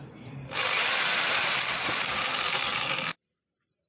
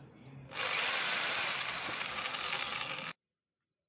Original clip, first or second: second